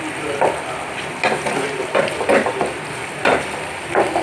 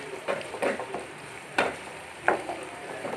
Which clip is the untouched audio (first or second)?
first